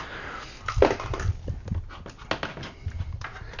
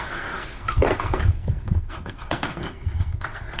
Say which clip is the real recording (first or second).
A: first